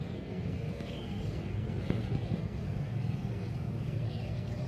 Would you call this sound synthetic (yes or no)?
yes